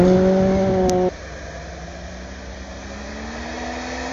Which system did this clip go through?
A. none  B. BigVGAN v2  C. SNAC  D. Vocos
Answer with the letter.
A